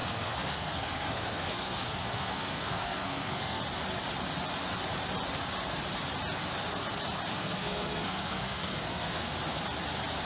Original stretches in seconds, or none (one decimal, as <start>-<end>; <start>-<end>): 3.6-7.3; 9.3-10.3